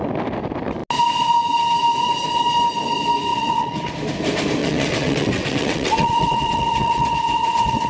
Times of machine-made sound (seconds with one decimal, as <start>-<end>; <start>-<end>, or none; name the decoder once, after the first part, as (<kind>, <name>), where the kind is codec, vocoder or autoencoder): 3.3-3.9 (vocoder, WaveNeXt); 4.6-7.9